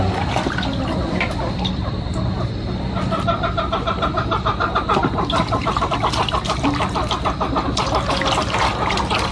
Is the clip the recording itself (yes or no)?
yes